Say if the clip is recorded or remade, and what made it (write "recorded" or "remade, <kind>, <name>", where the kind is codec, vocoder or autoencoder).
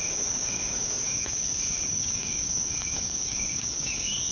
remade, codec, DAC